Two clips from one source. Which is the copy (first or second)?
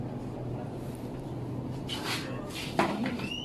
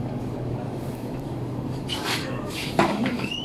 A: second